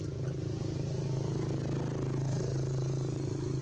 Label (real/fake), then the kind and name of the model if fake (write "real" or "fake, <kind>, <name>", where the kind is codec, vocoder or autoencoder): real